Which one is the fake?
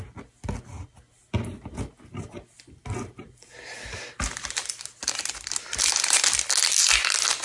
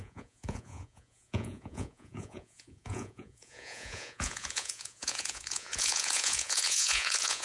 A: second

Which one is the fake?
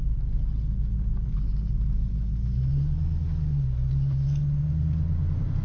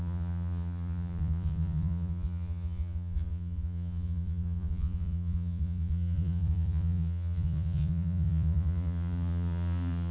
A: second